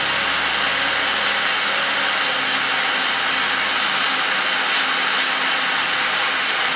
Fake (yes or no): no